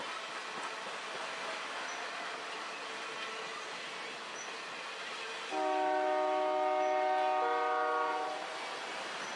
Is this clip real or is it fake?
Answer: real